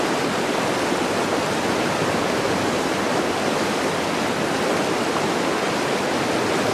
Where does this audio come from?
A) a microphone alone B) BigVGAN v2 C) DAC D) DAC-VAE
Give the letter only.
A